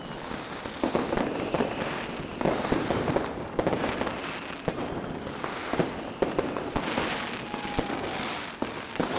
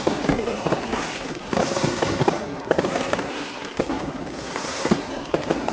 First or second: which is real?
first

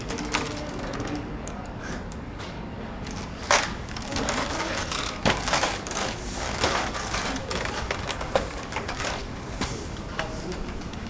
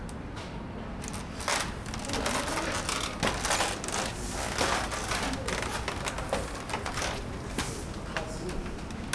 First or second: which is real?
second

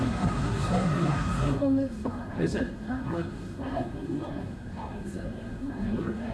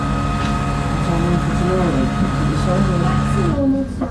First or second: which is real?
second